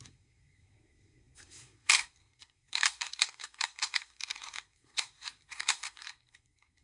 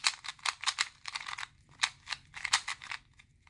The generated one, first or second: first